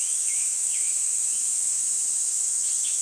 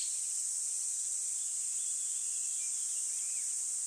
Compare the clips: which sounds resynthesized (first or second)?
first